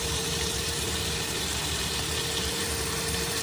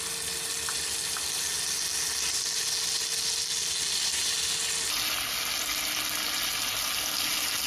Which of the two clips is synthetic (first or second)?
first